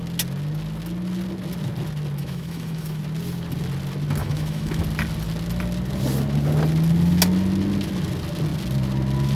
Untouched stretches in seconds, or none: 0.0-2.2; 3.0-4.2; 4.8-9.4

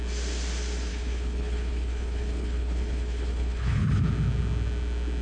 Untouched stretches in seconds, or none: 0.0-0.9; 4.0-5.2